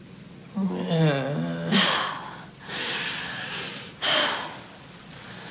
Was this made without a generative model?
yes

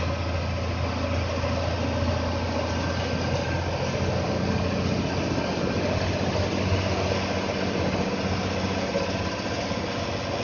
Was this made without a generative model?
yes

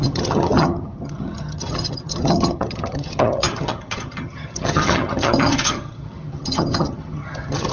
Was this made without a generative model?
no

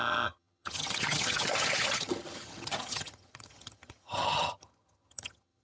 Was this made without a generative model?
no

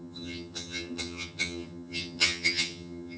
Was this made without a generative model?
no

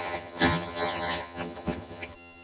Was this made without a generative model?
no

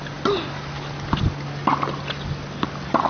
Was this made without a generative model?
yes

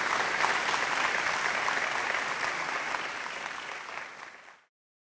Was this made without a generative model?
yes